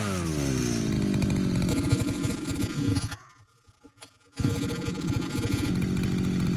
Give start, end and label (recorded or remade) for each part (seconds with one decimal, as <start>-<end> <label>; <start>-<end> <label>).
0.0-1.7 recorded; 1.7-5.7 remade; 5.7-6.6 recorded